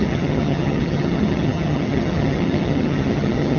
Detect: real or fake fake